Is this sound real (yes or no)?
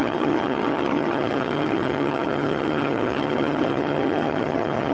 no